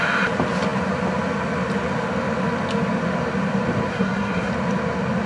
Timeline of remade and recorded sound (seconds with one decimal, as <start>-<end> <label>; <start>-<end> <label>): 0.0-3.9 recorded; 3.9-4.5 remade; 4.5-5.3 recorded